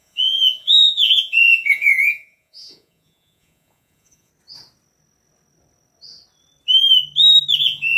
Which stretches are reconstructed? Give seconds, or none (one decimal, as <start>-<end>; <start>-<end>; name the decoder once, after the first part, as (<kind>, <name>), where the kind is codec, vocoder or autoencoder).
0.0-4.3 (vocoder, Vocos); 7.6-8.0

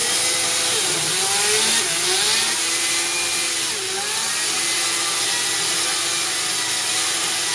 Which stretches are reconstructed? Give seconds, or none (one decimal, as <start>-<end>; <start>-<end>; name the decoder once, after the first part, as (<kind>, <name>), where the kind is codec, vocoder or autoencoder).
none

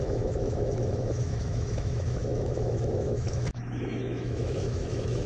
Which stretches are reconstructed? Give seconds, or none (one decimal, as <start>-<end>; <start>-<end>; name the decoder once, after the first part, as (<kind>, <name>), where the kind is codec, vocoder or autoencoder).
0.0-5.3 (autoencoder, DAC-VAE)